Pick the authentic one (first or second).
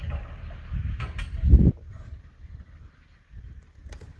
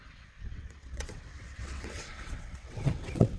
first